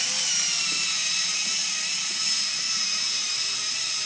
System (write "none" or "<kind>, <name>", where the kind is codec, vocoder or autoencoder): none